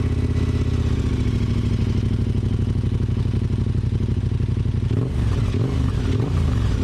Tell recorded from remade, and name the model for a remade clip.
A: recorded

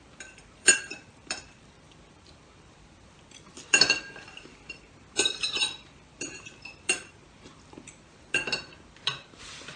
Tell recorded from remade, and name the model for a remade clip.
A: remade, vocoder, BigVGAN v2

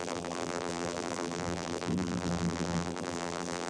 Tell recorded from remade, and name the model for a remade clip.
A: remade, vocoder, BigVGAN v2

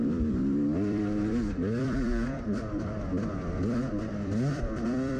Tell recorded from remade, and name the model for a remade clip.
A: remade, vocoder, BigVGAN v2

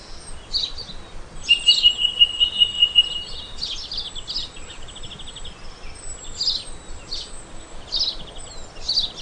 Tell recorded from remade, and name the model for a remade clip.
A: recorded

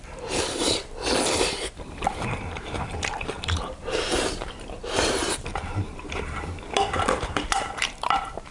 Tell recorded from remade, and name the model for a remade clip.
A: remade, vocoder, BigVGAN v2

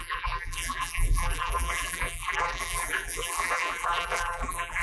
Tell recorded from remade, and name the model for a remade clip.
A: remade, vocoder, BigVGAN v2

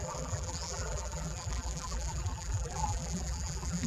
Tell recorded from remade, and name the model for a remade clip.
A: remade, vocoder, BigVGAN v2